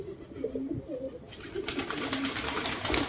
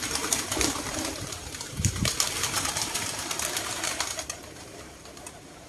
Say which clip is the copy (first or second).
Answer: second